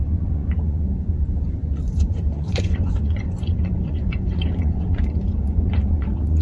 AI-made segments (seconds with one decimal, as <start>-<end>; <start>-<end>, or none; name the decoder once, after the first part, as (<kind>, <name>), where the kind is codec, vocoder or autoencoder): 0.0-6.4 (vocoder, Vocos)